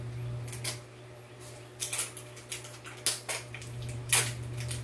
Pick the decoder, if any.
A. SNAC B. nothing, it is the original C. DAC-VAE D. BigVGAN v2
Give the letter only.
B